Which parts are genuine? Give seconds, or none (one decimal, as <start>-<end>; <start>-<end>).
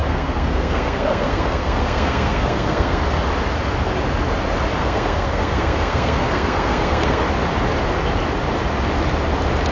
3.1-4.8; 7.2-9.7